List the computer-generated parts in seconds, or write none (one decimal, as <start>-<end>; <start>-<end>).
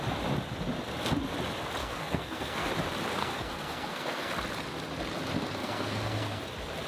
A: 1.8-2.7; 3.2-4.3; 5.6-6.4